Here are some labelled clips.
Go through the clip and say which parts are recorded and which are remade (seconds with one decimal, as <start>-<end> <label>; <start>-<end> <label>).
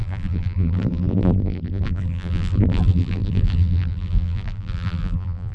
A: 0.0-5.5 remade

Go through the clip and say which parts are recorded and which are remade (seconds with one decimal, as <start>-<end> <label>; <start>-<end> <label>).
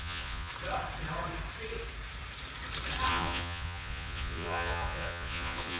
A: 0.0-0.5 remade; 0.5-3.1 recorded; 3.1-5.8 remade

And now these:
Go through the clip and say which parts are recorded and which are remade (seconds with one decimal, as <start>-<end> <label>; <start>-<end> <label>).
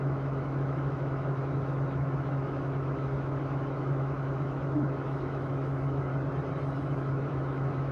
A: 0.0-6.1 remade; 6.1-6.8 recorded; 6.8-7.9 remade